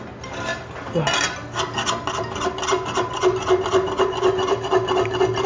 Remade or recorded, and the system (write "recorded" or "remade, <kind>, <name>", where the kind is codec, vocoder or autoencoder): recorded